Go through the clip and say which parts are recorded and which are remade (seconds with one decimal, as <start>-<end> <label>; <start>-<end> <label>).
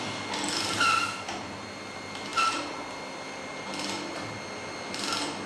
0.0-5.5 recorded